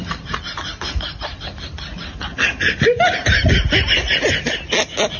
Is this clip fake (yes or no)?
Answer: no